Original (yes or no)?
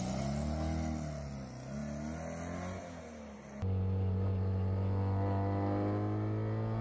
yes